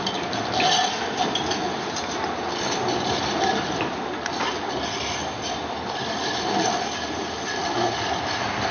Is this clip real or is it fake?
real